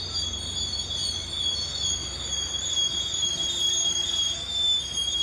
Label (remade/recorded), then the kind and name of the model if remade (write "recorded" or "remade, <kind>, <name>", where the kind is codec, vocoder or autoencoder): recorded